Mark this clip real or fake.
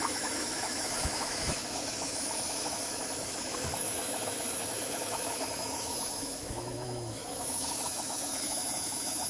fake